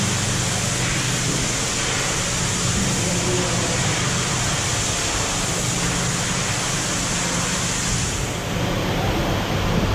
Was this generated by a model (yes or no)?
no